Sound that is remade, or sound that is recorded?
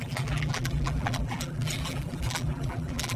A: remade